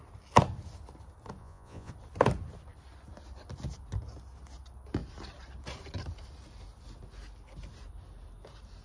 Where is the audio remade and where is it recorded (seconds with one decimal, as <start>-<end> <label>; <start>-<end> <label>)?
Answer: 0.0-1.4 recorded; 1.4-1.9 remade; 1.9-8.8 recorded